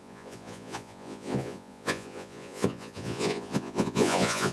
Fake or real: fake